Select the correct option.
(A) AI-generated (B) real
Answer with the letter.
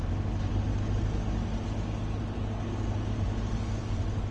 B